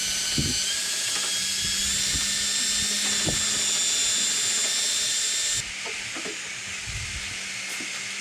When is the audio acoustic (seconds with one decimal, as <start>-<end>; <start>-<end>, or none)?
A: 0.0-8.2